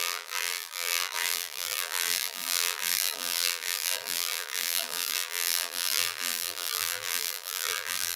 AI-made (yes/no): yes